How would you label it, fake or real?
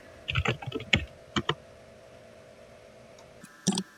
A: fake